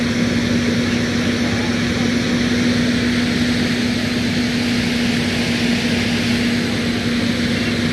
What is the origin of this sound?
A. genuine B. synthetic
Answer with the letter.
A